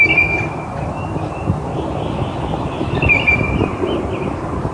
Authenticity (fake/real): real